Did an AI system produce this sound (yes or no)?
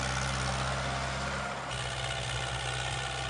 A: no